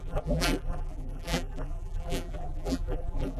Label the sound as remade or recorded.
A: remade